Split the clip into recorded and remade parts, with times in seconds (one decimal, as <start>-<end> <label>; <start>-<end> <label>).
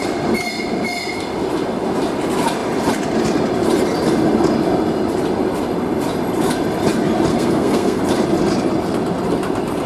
0.0-7.3 recorded; 7.3-8.0 remade; 8.0-9.9 recorded